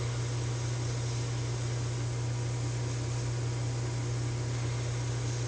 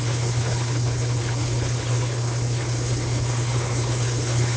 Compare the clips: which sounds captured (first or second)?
first